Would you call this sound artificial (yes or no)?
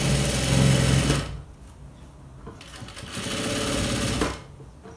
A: no